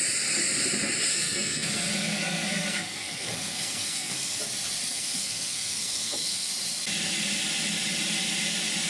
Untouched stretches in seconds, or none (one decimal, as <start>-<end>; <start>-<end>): 0.0-1.1; 4.4-4.9; 6.5-8.9